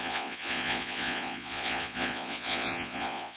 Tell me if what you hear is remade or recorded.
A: remade